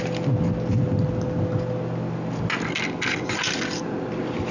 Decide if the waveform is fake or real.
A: real